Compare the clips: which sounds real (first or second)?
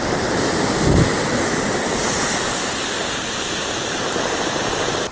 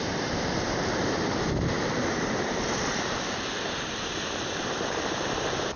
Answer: first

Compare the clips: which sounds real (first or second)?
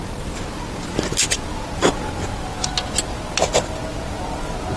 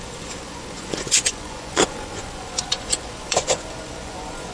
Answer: first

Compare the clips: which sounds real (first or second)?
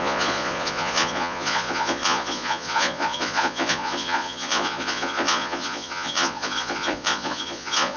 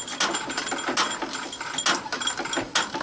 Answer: second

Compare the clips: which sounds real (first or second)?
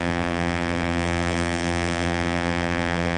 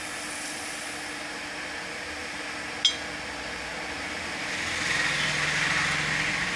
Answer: second